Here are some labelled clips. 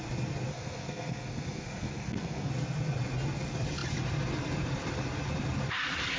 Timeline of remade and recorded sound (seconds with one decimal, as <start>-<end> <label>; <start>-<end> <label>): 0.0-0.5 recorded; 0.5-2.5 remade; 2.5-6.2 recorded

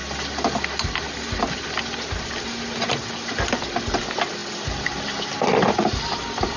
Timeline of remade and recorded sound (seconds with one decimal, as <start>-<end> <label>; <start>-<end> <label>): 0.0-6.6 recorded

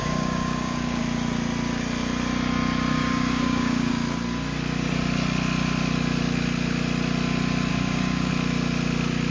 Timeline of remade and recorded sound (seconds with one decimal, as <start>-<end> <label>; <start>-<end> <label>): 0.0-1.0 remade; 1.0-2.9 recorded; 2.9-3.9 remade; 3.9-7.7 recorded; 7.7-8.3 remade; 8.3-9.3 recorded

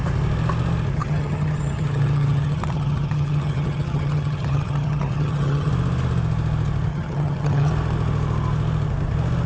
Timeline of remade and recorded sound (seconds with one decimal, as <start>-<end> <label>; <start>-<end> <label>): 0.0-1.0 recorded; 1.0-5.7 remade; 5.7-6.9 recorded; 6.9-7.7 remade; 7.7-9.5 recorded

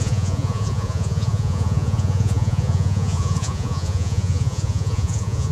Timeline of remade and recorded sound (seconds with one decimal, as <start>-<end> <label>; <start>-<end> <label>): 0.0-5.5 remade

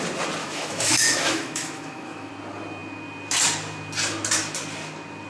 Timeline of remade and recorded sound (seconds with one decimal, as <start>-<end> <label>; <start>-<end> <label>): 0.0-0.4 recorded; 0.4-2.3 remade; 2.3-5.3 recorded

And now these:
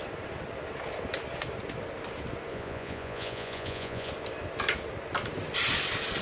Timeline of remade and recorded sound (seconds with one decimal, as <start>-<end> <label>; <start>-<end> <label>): 0.0-2.5 recorded; 2.5-4.1 remade; 4.1-6.2 recorded

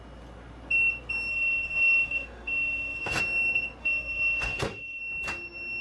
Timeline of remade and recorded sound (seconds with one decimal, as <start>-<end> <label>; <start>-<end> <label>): 0.0-1.3 recorded; 1.3-3.2 remade; 3.2-3.8 recorded; 3.8-5.0 remade; 5.0-5.8 recorded